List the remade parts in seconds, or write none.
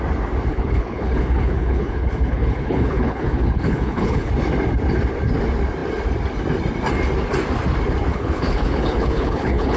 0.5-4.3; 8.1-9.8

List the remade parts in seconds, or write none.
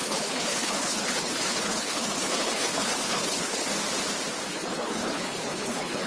0.0-3.7; 4.5-6.1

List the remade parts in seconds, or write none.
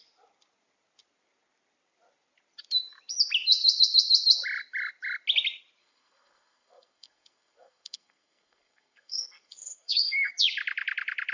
5.8-10.3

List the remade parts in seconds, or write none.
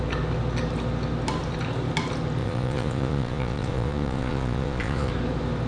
2.4-5.1